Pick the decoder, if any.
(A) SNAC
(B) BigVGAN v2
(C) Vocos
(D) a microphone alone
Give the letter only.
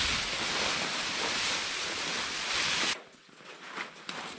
D